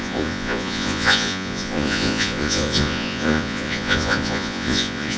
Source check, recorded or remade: remade